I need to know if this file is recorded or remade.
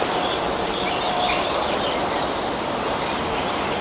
recorded